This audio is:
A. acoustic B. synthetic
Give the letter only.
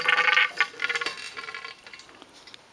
A